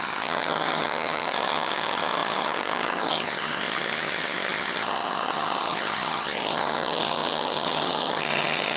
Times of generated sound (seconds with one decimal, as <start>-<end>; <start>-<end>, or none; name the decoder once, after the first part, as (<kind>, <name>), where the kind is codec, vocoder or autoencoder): 0.0-8.8 (vocoder, HiFi-GAN)